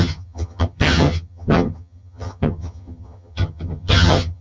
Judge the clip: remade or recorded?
remade